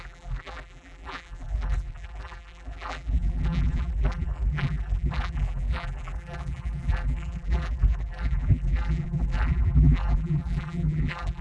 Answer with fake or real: fake